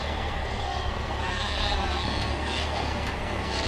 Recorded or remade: remade